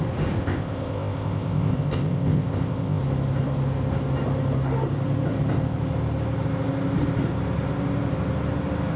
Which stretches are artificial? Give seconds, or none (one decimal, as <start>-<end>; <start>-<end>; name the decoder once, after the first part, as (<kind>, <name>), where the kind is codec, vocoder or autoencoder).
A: 0.4-3.0 (codec, ZipCodec)